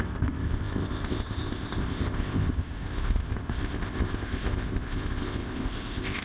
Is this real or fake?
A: fake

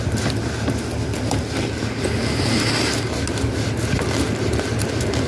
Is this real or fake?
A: real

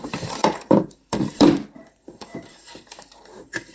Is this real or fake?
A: fake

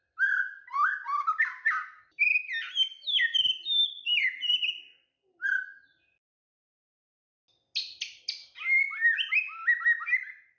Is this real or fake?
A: real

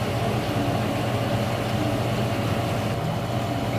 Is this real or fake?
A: real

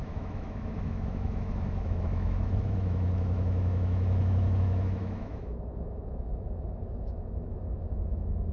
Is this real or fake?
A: fake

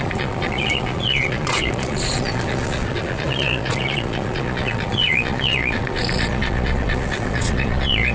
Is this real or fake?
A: fake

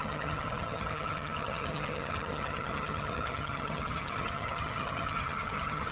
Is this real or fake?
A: fake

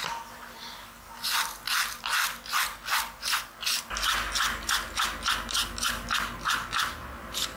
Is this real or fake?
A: real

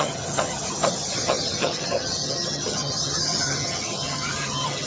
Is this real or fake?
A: fake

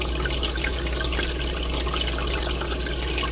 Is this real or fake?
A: real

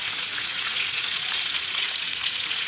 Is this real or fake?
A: fake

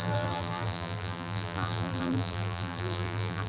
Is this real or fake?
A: fake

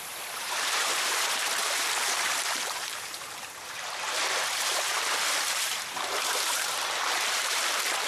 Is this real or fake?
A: fake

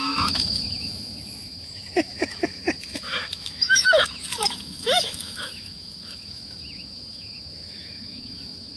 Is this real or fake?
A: fake